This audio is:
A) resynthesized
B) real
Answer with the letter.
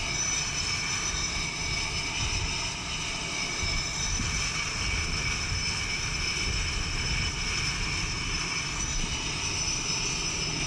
B